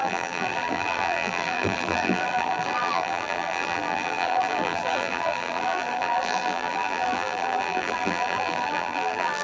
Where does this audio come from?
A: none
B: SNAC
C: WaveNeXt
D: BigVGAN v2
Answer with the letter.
D